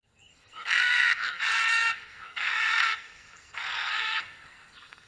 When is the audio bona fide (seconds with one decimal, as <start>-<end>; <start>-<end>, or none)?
none